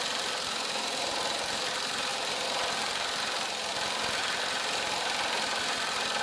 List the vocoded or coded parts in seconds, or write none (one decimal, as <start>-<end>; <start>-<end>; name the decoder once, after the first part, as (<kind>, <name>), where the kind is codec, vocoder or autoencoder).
none